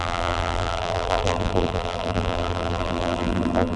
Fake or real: fake